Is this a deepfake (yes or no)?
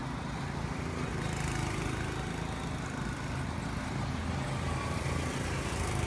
no